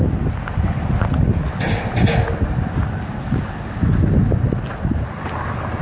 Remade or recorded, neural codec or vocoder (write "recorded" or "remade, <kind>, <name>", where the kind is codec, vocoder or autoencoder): recorded